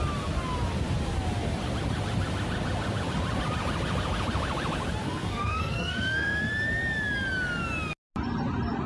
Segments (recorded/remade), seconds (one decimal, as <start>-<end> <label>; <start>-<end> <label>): 0.0-5.0 recorded; 5.0-6.5 remade; 6.5-8.9 recorded